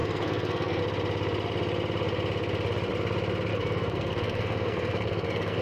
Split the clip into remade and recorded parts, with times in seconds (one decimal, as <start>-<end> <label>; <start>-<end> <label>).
0.0-0.8 remade; 0.8-3.5 recorded; 3.5-5.6 remade